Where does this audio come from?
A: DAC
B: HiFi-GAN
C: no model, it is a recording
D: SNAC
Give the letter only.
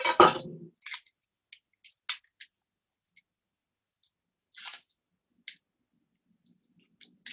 C